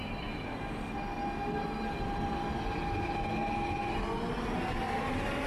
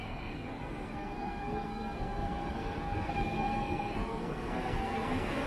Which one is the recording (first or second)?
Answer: first